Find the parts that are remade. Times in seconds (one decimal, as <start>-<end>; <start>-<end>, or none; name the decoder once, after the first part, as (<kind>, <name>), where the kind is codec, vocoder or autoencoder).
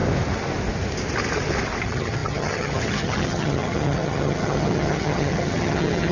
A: 1.8-6.1 (vocoder, HiFi-GAN)